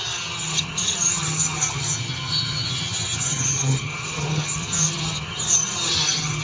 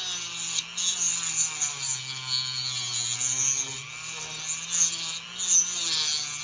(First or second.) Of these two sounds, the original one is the second